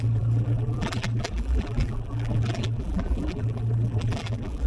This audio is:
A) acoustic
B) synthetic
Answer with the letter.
B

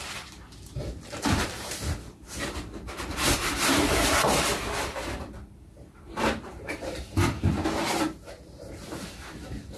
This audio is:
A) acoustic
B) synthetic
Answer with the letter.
B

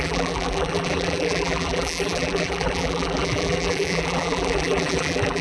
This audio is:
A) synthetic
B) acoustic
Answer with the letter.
A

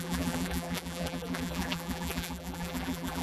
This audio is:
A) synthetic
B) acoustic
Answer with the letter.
A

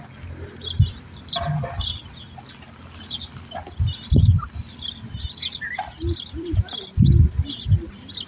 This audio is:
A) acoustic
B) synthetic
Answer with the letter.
A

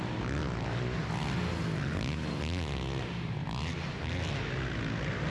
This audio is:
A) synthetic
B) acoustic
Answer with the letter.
B